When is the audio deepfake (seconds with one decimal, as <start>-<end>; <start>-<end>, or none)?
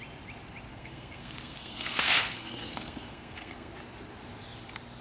0.7-3.7